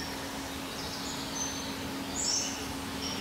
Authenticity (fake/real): real